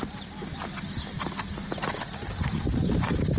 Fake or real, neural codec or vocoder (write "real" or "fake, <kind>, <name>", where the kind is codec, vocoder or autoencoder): real